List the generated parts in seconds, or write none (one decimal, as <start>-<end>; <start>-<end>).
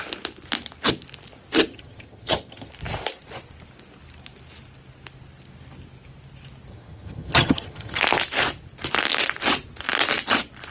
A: 1.7-2.7; 6.7-8.0